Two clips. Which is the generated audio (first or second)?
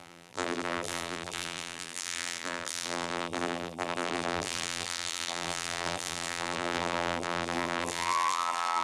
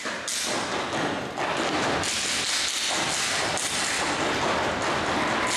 first